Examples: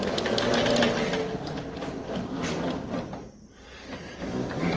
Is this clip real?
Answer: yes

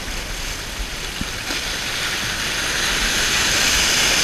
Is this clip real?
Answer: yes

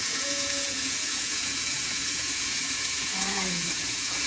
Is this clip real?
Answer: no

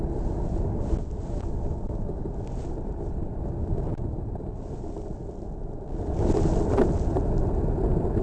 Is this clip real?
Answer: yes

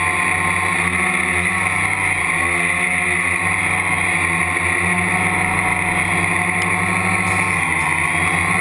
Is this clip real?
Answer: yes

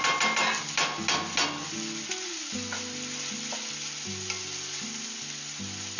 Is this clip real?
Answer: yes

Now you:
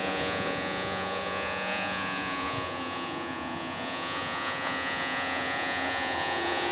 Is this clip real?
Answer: no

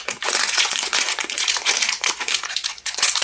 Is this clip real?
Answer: no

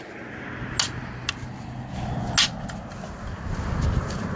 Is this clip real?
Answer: yes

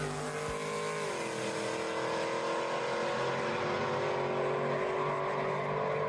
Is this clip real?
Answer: yes